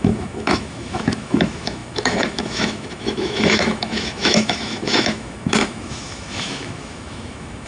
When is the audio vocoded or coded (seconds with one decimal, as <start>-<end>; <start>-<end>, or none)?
0.0-7.7